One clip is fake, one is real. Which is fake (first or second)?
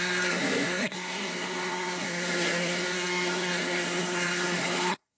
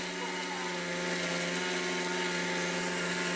first